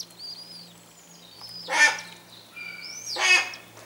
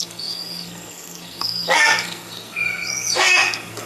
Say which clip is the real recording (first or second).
first